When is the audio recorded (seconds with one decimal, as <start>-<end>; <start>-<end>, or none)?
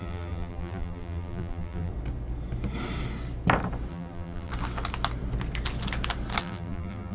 1.9-3.9; 4.5-6.4